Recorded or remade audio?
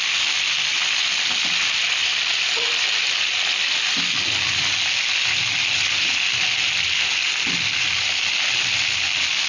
recorded